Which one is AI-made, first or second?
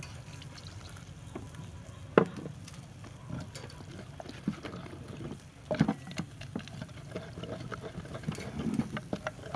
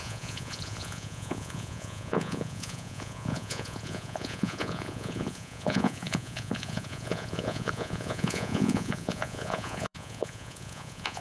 second